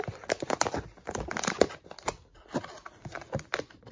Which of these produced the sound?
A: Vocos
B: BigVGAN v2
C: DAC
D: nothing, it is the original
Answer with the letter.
D